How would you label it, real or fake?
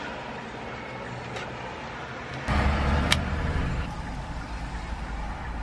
real